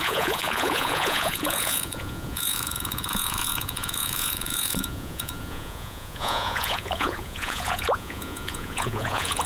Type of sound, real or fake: fake